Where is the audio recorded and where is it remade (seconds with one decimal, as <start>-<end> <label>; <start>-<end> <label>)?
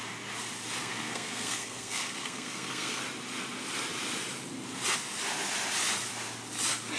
0.0-0.8 recorded; 0.8-3.0 remade; 3.0-7.0 recorded